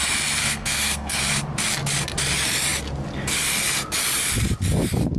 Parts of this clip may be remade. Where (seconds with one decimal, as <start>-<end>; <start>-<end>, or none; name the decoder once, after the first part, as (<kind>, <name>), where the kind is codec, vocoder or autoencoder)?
0.4-1.2 (codec, SNAC)